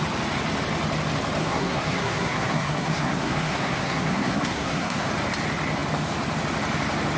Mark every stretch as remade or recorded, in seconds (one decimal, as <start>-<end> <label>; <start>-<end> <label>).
0.0-1.4 recorded; 1.4-5.1 remade; 5.1-7.2 recorded